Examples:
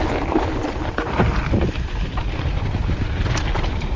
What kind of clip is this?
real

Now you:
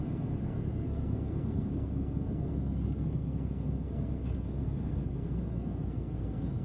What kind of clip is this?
fake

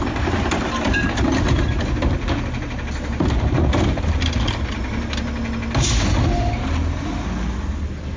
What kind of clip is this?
real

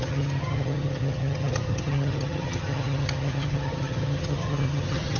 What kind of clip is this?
fake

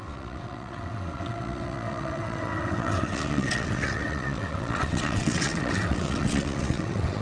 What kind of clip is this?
fake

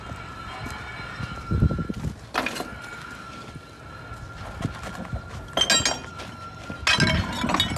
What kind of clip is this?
real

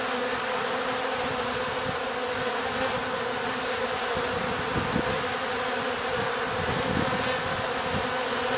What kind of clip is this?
real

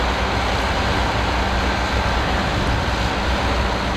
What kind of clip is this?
real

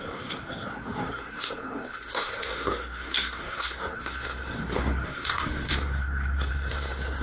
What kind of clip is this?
fake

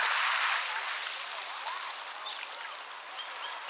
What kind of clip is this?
real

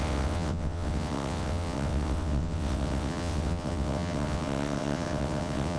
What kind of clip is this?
fake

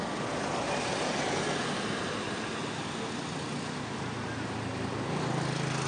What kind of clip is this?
real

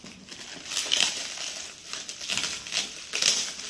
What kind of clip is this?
real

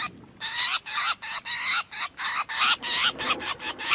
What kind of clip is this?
real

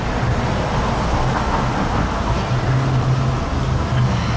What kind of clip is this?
real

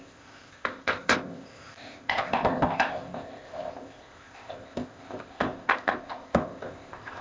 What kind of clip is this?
fake